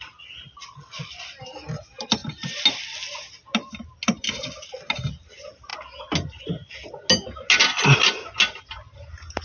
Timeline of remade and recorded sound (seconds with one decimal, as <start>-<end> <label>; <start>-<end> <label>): 0.0-9.4 recorded